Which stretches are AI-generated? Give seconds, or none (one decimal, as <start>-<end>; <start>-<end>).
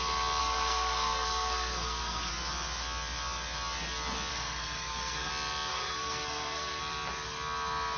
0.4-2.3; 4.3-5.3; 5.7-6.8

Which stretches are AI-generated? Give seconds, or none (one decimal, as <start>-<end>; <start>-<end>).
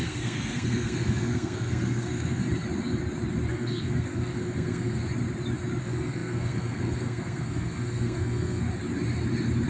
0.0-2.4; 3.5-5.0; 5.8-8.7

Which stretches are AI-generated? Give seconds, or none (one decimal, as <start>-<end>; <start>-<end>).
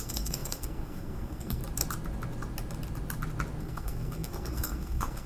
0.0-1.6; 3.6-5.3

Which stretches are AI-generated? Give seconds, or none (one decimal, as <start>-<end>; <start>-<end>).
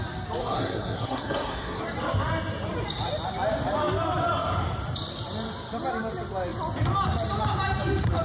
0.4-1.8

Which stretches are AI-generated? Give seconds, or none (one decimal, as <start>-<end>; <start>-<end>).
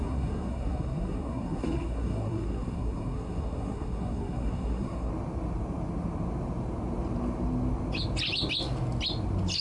0.0-5.1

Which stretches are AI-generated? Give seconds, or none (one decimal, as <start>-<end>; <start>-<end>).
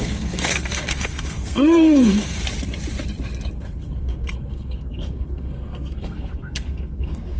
0.0-2.4; 3.5-7.4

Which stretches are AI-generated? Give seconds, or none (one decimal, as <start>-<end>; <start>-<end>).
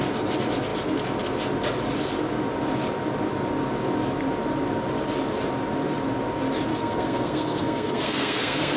6.7-8.8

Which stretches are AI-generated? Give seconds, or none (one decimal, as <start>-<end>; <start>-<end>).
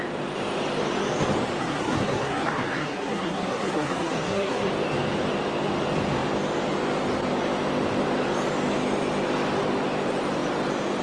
1.6-4.7